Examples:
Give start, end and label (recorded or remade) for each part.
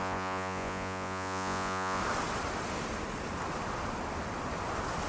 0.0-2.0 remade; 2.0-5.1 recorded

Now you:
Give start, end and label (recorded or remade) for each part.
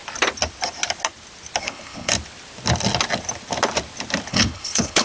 0.0-1.6 recorded; 1.6-2.1 remade; 2.1-4.3 recorded; 4.3-5.0 remade